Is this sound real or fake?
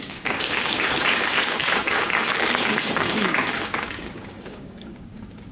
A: fake